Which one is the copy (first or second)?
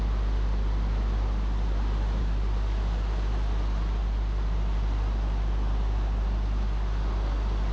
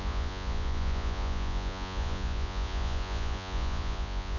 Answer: second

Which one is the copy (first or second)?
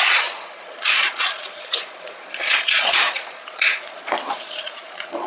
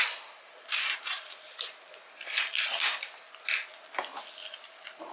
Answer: first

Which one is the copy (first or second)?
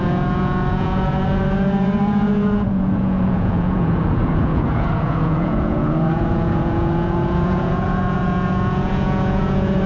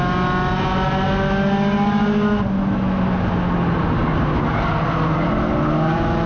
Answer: first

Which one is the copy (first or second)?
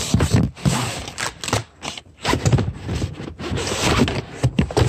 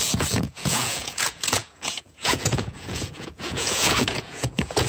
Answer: second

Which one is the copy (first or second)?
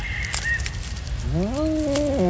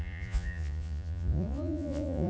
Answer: second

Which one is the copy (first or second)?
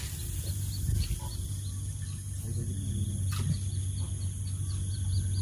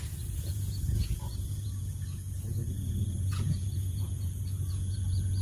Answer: second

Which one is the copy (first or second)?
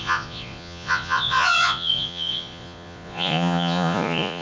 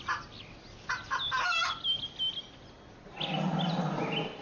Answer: first